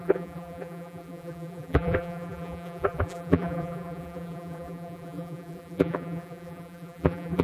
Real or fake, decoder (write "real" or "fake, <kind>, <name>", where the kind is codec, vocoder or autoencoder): fake, vocoder, BigVGAN v2